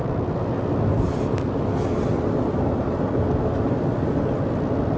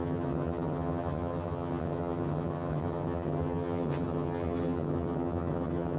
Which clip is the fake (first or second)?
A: second